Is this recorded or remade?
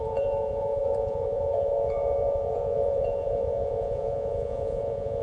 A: remade